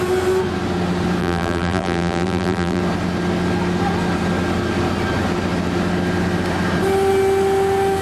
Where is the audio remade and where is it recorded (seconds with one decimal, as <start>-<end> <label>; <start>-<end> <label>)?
0.0-1.2 recorded; 1.2-2.8 remade; 2.8-8.0 recorded